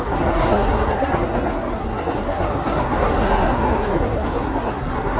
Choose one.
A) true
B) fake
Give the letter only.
B